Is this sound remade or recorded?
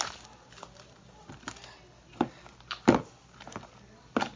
recorded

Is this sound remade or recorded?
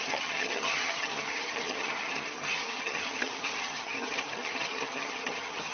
remade